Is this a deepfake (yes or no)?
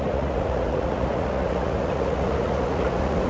yes